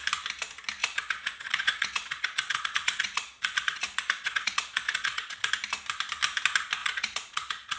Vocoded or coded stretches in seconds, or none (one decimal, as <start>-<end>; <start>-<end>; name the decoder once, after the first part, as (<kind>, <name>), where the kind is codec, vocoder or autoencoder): 0.8-5.5 (vocoder, Vocos); 6.8-7.8